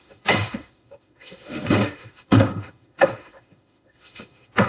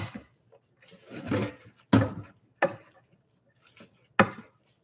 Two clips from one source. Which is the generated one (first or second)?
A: first